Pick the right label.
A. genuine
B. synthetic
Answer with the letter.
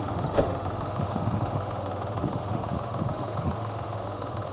B